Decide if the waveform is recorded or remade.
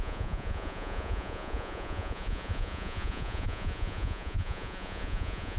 remade